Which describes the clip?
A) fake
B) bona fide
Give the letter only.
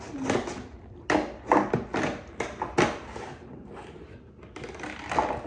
B